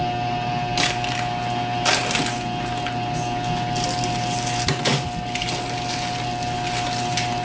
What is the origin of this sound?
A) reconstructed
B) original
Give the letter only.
B